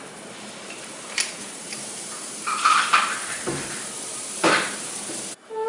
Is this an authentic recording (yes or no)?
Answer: no